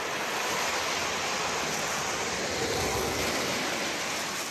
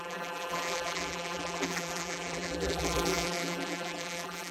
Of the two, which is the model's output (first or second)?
second